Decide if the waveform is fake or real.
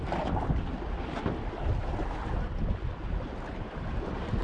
real